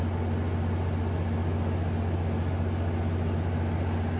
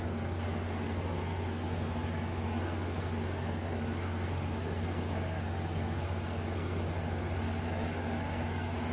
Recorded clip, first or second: first